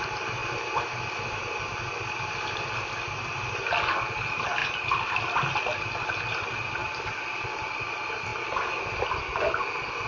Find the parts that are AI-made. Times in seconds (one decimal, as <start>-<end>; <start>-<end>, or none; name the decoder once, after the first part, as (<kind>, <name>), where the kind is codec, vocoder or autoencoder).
none